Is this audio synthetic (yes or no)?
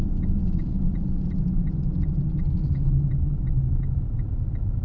no